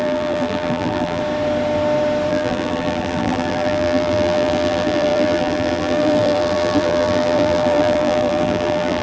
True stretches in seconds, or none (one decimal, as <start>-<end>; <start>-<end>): 1.2-2.3